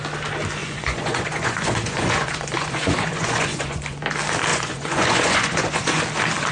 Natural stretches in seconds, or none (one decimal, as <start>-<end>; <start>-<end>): 0.0-0.6; 4.0-4.5; 6.0-6.5